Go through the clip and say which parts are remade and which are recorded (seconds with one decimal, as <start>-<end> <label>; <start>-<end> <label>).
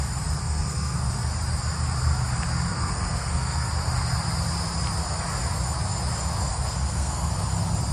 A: 0.0-0.4 recorded; 0.4-1.1 remade; 1.1-2.7 recorded; 2.7-3.7 remade; 3.7-6.5 recorded; 6.5-7.3 remade; 7.3-7.9 recorded